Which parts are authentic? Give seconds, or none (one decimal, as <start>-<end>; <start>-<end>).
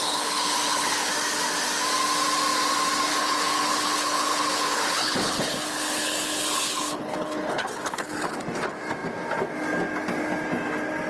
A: 1.1-3.1; 8.4-11.1